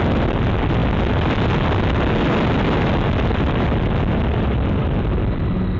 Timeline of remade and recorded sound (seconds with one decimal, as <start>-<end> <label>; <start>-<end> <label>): 0.0-5.8 recorded